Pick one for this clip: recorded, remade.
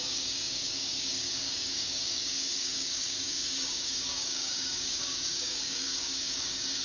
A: remade